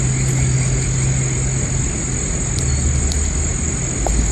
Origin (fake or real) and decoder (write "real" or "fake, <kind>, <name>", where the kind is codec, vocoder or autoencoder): real